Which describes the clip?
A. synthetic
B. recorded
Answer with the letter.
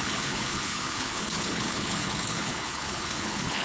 A